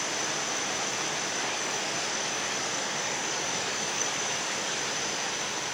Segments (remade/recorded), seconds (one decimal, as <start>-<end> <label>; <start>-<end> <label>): 0.0-1.4 recorded; 1.4-4.8 remade; 4.8-5.7 recorded